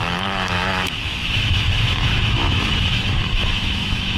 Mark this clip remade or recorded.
remade